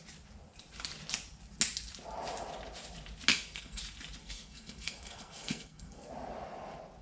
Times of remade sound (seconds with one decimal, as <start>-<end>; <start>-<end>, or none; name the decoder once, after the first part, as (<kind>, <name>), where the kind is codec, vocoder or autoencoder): 3.3-3.8 (codec, SNAC); 4.2-6.1